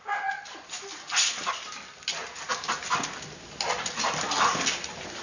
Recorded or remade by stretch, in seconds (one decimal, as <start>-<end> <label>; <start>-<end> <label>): 0.0-5.2 recorded